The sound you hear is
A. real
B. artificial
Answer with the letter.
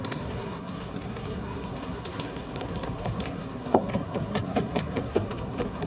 B